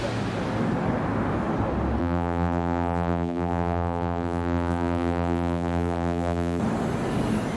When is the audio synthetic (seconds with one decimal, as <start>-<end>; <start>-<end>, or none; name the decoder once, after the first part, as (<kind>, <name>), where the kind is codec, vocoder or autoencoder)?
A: 2.0-6.6 (vocoder, BigVGAN v2)